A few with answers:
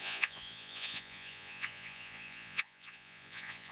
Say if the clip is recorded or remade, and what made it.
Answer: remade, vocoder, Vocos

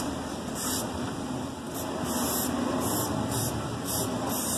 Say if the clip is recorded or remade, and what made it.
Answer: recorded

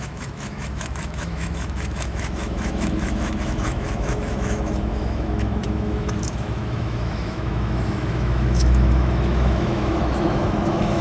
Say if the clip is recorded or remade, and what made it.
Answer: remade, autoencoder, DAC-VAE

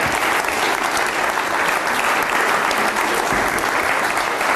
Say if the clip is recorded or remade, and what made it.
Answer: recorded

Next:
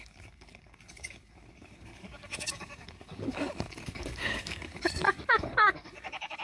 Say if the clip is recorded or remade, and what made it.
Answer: remade, codec, DAC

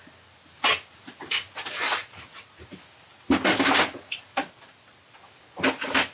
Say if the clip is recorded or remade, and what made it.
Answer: recorded